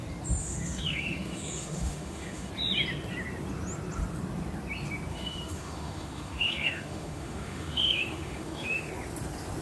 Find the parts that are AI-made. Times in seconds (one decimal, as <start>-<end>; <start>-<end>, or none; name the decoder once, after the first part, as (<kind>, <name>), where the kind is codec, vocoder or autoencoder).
0.4-2.5 (autoencoder, DAC-VAE); 5.1-8.9